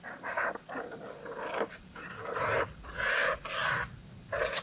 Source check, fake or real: real